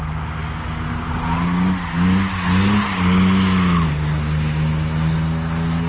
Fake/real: real